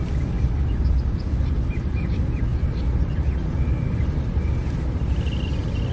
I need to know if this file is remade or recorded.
recorded